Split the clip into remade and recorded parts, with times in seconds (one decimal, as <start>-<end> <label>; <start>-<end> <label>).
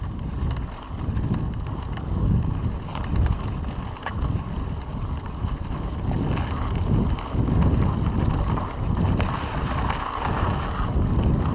0.0-11.5 recorded